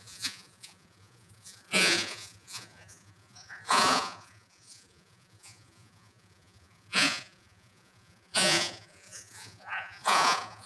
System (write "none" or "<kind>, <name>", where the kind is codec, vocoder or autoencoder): vocoder, Vocos